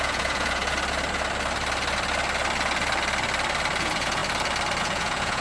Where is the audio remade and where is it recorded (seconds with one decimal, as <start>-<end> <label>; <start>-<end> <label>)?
0.0-0.6 remade; 0.6-3.8 recorded; 3.8-4.2 remade; 4.2-4.8 recorded; 4.8-5.4 remade